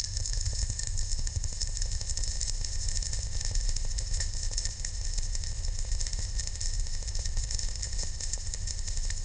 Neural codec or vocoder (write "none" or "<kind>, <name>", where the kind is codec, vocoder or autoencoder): codec, ZipCodec